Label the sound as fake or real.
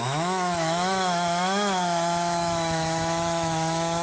fake